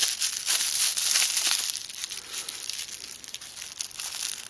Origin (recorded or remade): recorded